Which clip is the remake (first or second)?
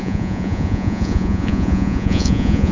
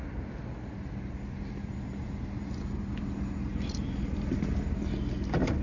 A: first